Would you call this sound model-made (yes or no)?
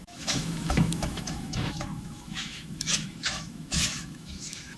yes